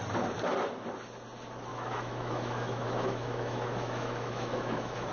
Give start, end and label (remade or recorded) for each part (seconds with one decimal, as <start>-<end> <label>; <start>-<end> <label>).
0.0-1.7 recorded; 1.7-5.1 remade

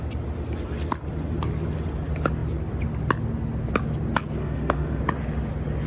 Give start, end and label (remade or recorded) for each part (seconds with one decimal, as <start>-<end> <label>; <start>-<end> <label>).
0.0-4.4 recorded; 4.4-5.0 remade; 5.0-5.9 recorded

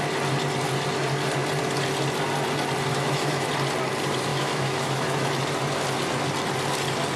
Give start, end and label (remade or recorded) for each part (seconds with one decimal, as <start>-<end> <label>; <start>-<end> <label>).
0.0-2.9 recorded; 2.9-3.5 remade; 3.5-4.3 recorded; 4.3-5.3 remade; 5.3-7.2 recorded